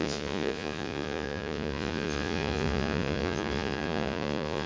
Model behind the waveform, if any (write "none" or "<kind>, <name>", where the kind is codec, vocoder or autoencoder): vocoder, Vocos